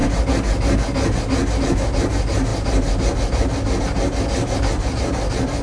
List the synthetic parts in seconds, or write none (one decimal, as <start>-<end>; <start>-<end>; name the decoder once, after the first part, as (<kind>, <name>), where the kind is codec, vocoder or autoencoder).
none